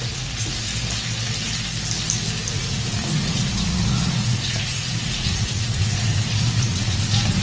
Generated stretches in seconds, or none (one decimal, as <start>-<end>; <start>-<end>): 0.0-0.7; 2.5-7.4